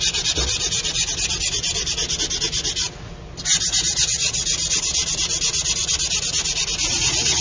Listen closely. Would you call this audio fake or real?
real